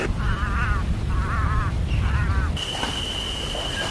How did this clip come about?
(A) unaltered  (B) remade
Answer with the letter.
A